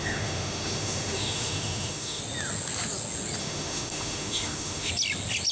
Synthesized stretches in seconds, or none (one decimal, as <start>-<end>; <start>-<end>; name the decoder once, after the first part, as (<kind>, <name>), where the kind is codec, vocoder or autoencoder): 0.0-2.2 (autoencoder, DAC-VAE); 3.4-4.9